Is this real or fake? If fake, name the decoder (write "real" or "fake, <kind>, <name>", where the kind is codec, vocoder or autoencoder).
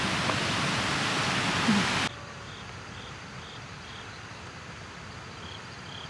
real